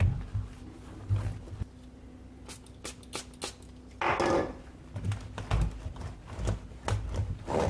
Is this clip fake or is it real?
real